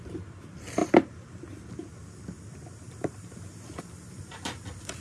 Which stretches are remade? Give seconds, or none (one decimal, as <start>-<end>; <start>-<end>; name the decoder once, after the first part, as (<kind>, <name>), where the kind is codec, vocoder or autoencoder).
none